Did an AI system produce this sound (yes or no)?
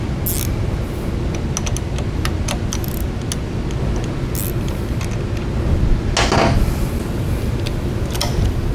no